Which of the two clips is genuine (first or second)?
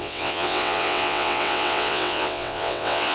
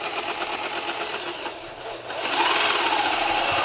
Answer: second